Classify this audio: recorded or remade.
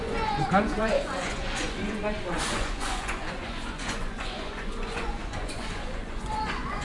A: remade